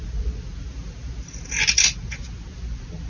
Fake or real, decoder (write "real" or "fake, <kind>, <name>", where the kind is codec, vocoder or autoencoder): real